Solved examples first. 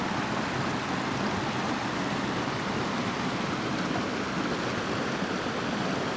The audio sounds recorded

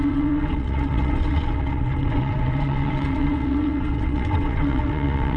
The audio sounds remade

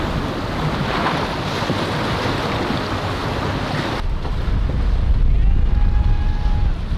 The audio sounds recorded